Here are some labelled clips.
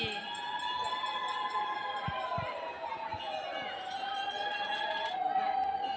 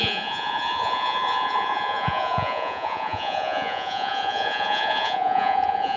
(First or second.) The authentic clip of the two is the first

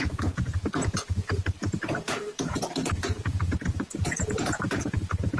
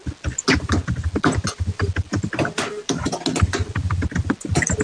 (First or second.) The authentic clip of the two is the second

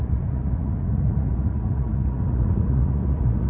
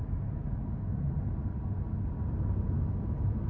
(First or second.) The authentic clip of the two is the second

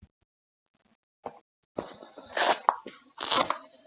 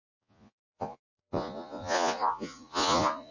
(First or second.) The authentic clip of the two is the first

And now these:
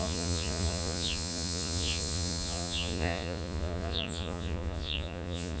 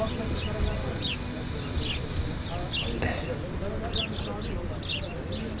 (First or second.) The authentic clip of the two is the second